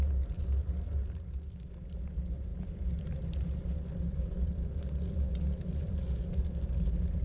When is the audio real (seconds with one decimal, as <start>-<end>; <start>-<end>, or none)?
0.0-2.5; 6.8-7.2